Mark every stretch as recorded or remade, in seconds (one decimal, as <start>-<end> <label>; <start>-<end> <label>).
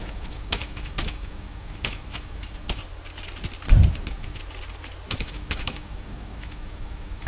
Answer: 0.0-2.8 remade; 2.8-3.9 recorded; 3.9-4.4 remade; 4.4-5.2 recorded; 5.2-7.3 remade